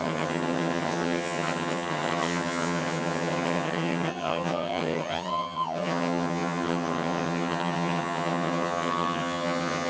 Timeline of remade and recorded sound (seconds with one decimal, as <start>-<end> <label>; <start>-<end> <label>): 0.0-9.9 remade